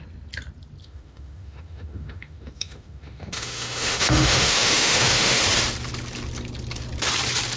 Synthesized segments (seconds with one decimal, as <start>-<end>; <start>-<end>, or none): 0.8-5.4